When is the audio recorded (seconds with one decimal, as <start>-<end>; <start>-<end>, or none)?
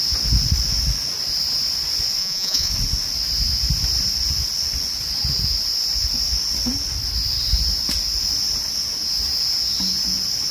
0.0-2.2; 2.7-10.5